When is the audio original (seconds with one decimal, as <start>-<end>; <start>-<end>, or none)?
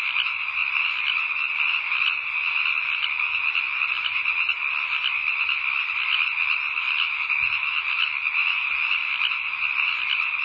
0.0-10.4